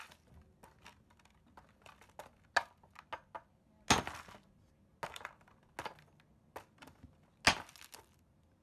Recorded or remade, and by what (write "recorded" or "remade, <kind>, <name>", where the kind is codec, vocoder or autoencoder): recorded